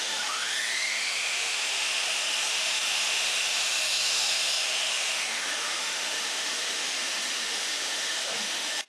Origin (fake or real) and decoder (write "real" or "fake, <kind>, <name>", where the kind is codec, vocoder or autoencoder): fake, autoencoder, DAC-VAE